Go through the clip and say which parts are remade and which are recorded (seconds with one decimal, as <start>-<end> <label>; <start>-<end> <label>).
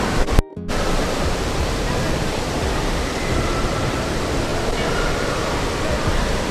0.0-0.5 remade; 0.5-1.2 recorded; 1.2-4.5 remade; 4.5-5.8 recorded; 5.8-6.5 remade